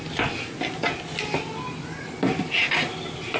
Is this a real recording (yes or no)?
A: yes